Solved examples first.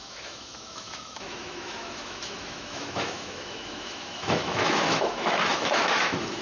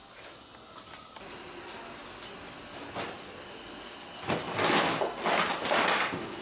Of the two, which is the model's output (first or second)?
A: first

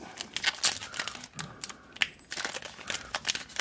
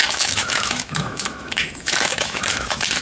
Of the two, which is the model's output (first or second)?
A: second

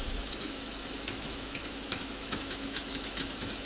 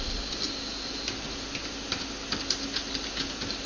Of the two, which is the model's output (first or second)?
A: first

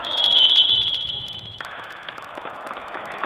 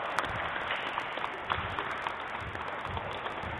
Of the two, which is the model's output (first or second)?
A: first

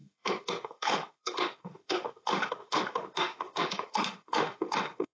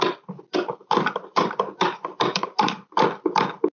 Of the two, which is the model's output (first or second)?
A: first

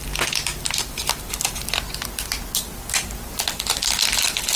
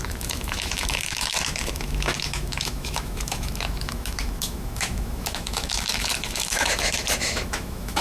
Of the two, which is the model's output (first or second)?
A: second